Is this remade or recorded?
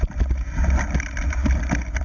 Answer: recorded